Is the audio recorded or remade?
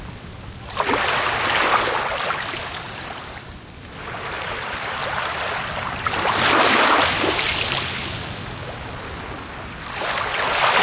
recorded